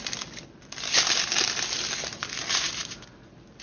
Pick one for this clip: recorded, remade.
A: recorded